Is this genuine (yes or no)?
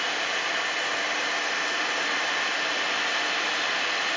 no